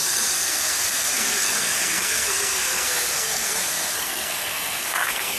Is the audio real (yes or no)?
no